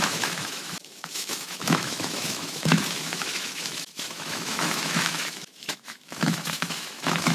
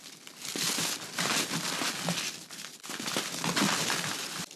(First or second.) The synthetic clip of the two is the first